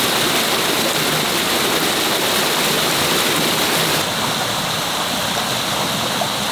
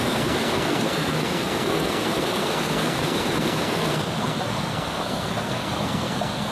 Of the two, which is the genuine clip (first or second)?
first